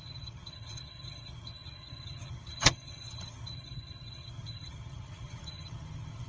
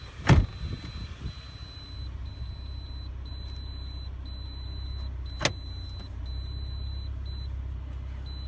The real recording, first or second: second